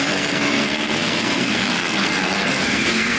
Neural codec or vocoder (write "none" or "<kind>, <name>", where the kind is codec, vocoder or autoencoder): codec, SNAC